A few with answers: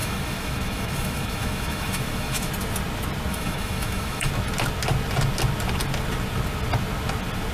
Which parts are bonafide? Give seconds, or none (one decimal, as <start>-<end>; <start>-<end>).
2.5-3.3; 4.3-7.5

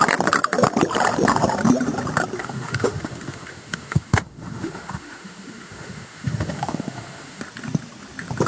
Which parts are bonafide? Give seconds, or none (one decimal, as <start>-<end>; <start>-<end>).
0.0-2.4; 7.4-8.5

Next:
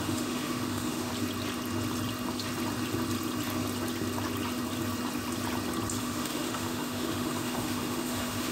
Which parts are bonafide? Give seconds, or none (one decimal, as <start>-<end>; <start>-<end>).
1.1-6.0

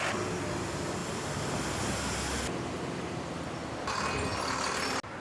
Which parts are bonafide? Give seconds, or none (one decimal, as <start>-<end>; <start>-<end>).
0.0-5.2

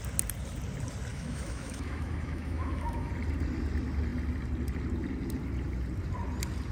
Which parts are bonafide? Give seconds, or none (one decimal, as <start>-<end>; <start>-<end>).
0.0-1.1; 3.1-6.7